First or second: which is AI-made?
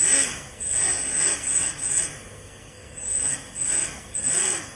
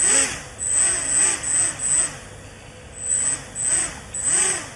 first